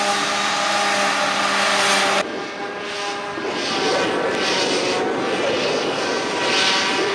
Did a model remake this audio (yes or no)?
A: no